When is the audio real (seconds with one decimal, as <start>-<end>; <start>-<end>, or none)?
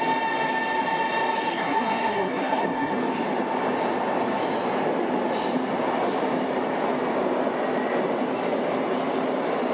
0.0-1.5; 2.9-9.7